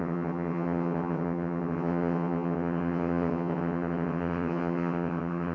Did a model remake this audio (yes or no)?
yes